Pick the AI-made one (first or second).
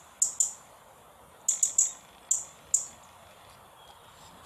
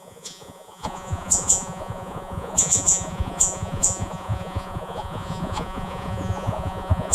second